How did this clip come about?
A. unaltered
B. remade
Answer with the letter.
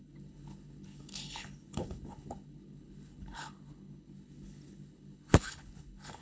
B